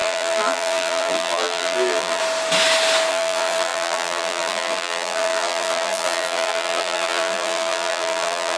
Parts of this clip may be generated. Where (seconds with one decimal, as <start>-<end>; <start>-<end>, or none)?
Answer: 0.0-2.2; 3.1-8.6